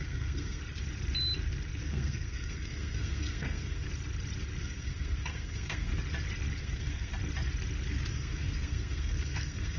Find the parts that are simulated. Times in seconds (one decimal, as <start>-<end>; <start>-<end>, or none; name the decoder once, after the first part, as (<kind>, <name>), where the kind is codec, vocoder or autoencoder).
0.0-0.6 (codec, SNAC); 1.8-3.9; 4.6-5.9; 6.6-7.1; 8.1-9.8